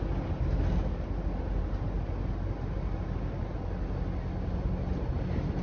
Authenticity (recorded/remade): recorded